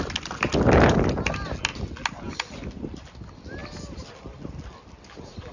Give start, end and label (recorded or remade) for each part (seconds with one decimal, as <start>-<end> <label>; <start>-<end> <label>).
0.0-5.5 recorded